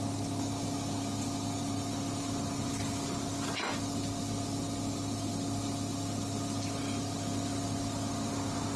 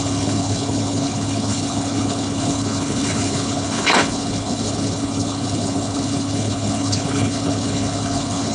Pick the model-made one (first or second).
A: second